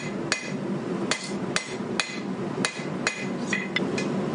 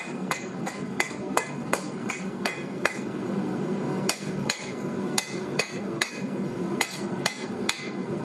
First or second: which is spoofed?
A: second